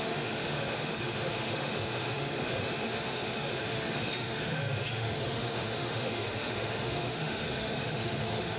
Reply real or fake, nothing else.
fake